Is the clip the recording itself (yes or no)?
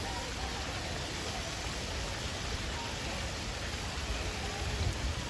yes